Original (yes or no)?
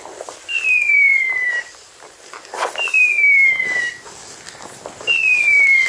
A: yes